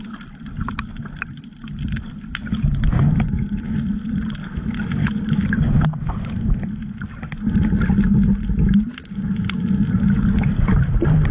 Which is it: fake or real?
real